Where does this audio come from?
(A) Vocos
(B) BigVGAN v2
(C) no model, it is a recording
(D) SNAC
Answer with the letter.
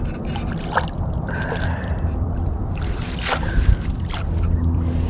B